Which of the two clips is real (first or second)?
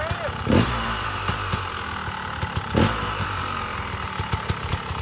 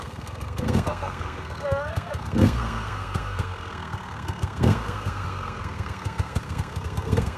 first